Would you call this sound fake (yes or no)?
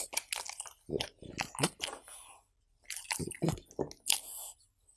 no